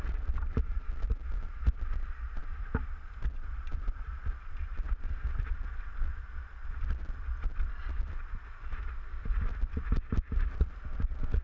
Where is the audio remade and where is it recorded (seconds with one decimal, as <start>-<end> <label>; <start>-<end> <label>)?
0.0-11.4 recorded